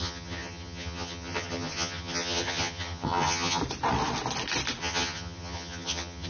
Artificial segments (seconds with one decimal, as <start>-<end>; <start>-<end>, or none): 0.0-3.6; 4.8-6.3